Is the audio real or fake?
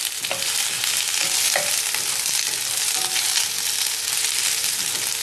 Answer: real